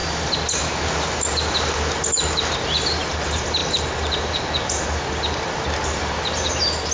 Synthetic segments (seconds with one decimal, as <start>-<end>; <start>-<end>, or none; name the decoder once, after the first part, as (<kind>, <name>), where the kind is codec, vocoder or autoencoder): none